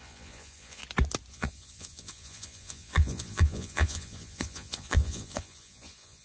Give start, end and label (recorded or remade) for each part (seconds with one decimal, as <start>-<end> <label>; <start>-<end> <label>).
0.0-0.8 remade; 0.8-1.3 recorded; 1.3-6.2 remade